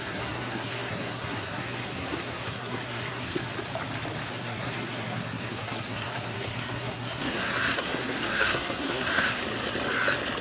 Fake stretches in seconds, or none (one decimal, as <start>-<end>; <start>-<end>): 0.0-3.5; 4.3-9.4